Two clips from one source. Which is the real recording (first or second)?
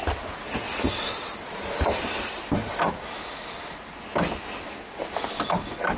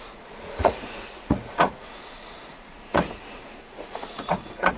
first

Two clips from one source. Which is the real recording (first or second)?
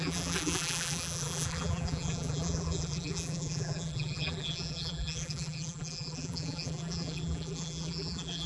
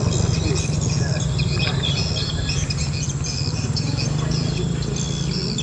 second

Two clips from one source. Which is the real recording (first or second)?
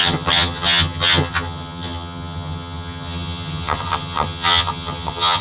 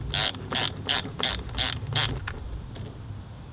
second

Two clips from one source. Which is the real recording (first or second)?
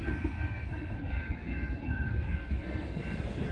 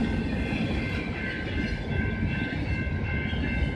second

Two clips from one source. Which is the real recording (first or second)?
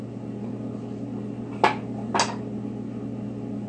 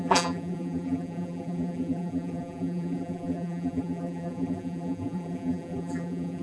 first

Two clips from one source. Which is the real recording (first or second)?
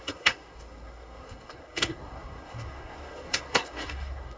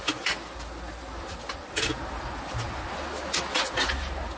second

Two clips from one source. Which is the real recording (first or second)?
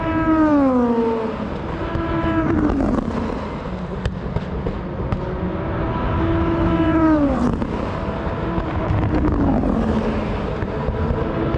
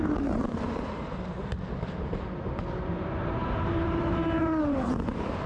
first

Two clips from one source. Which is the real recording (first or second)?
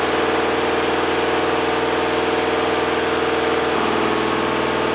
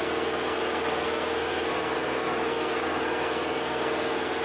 first